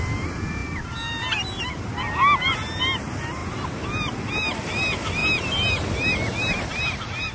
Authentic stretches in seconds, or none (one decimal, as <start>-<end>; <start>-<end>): 0.0-7.3